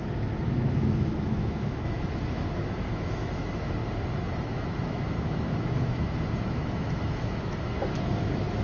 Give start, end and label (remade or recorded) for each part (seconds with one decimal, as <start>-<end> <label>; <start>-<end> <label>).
0.0-3.8 remade; 3.8-4.3 recorded; 4.3-8.6 remade